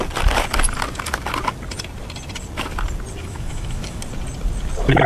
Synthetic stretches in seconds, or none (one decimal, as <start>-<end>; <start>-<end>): 3.2-4.0